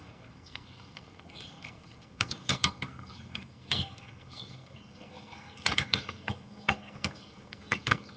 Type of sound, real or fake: fake